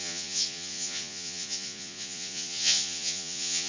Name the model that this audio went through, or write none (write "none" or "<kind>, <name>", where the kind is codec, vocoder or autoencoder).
vocoder, Vocos